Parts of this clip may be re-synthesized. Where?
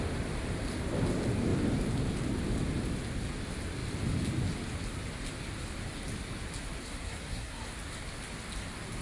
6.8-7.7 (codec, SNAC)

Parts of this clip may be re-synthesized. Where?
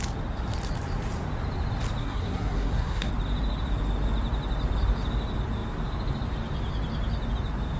2.0-3.1 (codec, SNAC)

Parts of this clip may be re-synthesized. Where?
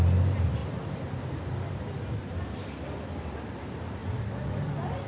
none